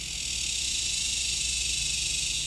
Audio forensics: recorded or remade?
recorded